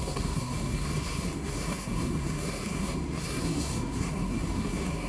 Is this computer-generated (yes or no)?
yes